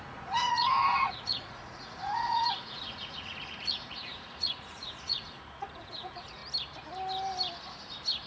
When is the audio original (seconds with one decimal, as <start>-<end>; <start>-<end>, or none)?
6.4-8.3